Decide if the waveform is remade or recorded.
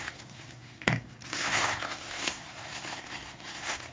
remade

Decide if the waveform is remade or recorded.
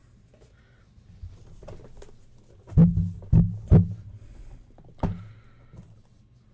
recorded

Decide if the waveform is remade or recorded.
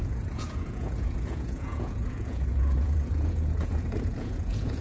remade